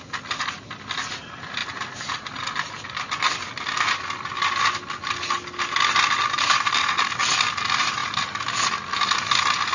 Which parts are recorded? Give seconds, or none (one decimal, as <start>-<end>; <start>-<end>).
0.0-9.7